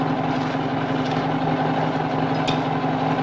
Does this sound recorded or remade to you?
recorded